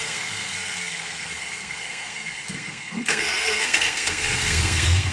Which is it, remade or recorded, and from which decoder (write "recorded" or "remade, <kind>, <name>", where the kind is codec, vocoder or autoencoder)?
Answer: remade, codec, SNAC